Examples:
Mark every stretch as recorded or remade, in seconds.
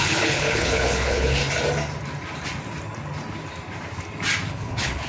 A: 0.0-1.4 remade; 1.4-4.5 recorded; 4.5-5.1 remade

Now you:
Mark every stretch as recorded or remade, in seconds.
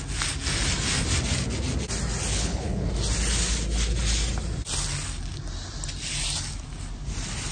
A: 0.0-2.3 recorded; 2.3-2.9 remade; 2.9-7.5 recorded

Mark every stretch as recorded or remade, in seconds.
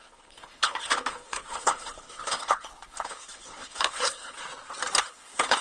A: 0.0-4.4 remade; 4.4-5.0 recorded; 5.0-5.6 remade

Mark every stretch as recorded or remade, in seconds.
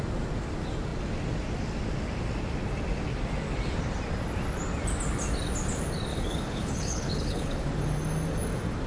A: 0.0-6.1 recorded; 6.1-7.7 remade; 7.7-8.9 recorded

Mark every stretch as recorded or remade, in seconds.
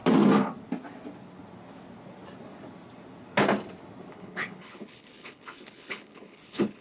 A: 0.0-4.1 recorded; 4.1-6.8 remade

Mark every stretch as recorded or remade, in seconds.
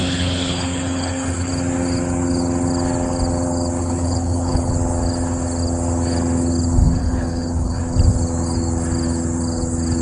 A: 0.0-1.5 remade; 1.5-3.8 recorded; 3.8-4.7 remade; 4.7-7.0 recorded; 7.0-7.8 remade; 7.8-10.0 recorded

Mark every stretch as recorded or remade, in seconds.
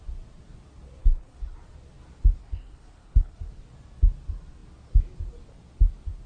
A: 0.0-1.0 recorded; 1.0-1.6 remade; 1.6-2.4 recorded; 2.4-3.5 remade; 3.5-6.3 recorded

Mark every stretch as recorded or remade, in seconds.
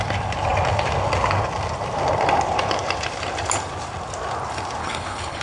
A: 0.0-4.8 recorded; 4.8-5.4 remade